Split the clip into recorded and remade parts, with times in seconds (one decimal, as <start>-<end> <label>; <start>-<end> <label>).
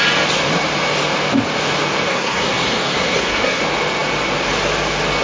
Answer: 0.0-2.1 recorded; 2.1-3.6 remade; 3.6-5.2 recorded